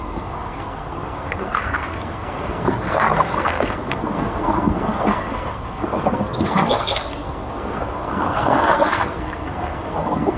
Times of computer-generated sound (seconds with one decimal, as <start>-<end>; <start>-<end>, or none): 0.0-10.4